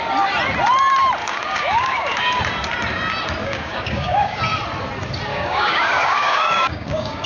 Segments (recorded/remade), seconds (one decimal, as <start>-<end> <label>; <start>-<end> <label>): 0.0-1.2 recorded; 1.2-2.4 remade; 2.4-3.4 recorded; 3.4-4.4 remade; 4.4-5.3 recorded; 5.3-7.3 remade